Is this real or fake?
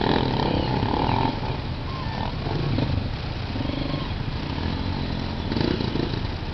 real